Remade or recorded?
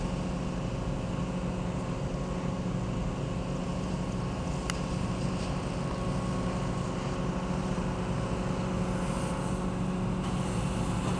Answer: recorded